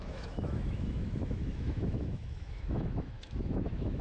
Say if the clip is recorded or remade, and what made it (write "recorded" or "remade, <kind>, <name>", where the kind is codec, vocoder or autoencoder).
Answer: remade, autoencoder, DAC-VAE